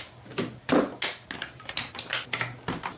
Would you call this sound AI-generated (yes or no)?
no